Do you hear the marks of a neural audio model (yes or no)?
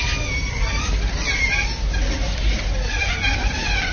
no